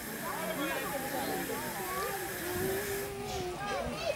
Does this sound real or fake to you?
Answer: real